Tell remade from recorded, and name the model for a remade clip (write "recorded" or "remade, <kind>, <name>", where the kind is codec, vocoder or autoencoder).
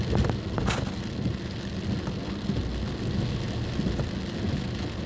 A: recorded